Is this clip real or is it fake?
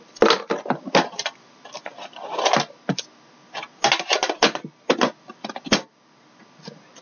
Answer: real